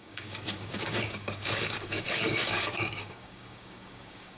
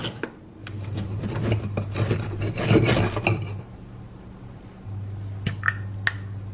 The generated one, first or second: first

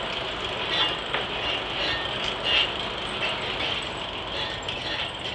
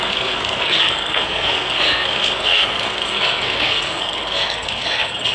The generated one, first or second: second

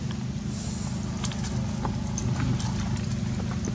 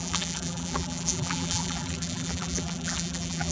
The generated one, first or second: second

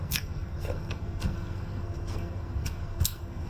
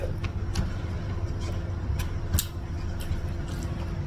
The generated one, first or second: first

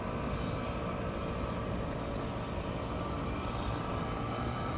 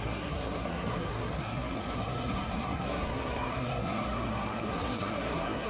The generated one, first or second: second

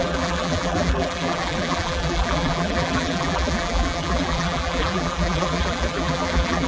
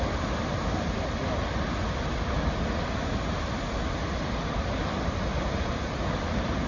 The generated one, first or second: first